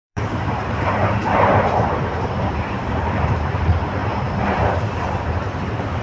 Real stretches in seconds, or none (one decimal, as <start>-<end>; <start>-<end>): 3.6-4.0

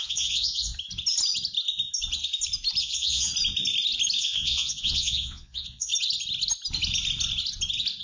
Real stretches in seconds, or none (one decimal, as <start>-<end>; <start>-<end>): 0.7-2.8; 3.3-4.2; 5.9-8.0